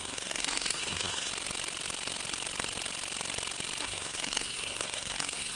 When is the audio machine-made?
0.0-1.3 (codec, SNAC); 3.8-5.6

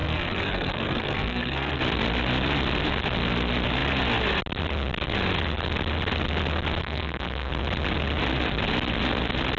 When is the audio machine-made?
0.0-1.8 (codec, SNAC); 6.8-7.5

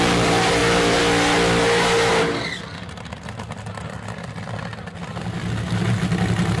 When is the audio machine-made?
none